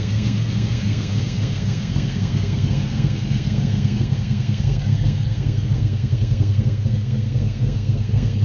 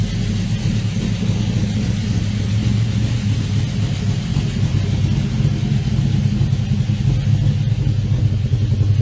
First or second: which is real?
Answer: second